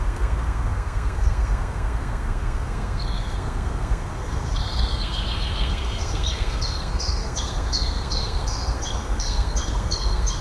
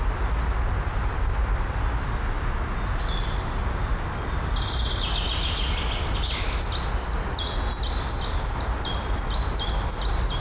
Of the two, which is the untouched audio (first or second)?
second